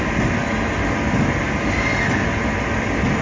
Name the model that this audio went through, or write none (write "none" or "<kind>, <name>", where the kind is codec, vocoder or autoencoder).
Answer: none